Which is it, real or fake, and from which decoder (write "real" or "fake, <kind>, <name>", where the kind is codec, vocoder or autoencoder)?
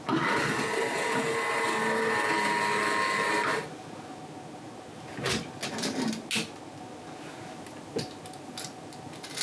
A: real